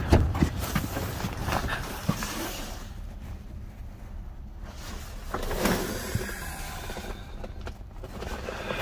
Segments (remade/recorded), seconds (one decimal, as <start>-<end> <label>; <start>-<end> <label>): 0.0-0.7 remade; 0.7-1.4 recorded; 1.4-3.7 remade; 3.7-8.8 recorded